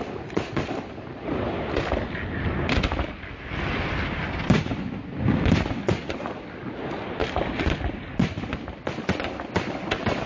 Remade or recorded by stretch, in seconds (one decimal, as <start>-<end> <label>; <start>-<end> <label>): 0.0-7.2 recorded; 7.2-7.8 remade; 7.8-10.3 recorded